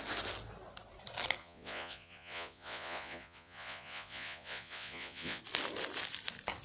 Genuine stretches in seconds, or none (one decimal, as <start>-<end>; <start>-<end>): 0.0-1.4; 5.4-6.6

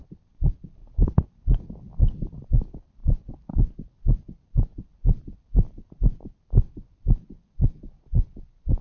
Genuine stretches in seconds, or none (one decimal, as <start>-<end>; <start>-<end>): 0.0-0.8; 1.3-8.8

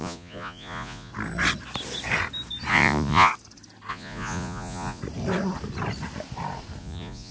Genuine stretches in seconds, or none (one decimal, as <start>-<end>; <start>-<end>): 1.1-2.7; 3.3-3.9; 5.0-6.8

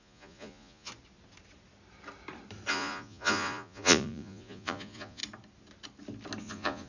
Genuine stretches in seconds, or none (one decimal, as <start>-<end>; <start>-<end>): 0.9-2.7; 5.2-6.4

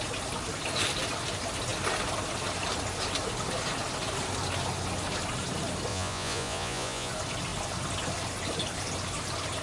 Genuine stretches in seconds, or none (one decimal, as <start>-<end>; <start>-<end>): 0.0-5.9; 7.1-9.6